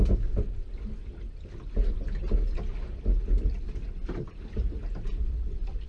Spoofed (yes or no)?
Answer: no